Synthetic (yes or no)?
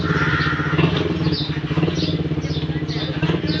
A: no